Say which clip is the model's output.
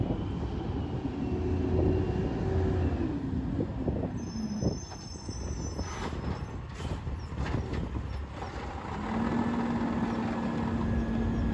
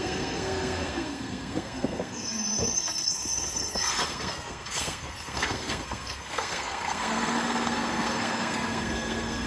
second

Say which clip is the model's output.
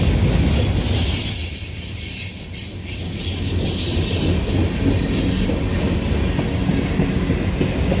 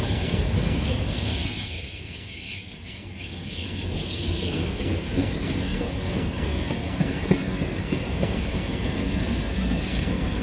second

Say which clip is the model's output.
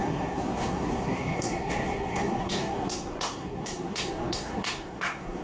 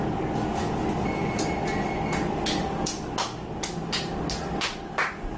first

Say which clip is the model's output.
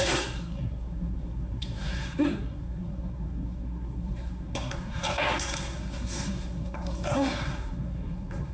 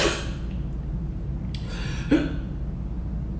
first